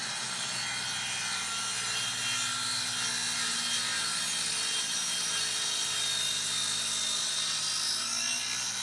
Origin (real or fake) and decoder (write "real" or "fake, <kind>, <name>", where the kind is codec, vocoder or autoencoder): real